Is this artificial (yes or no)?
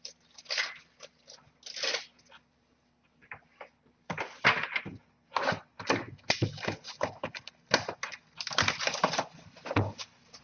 no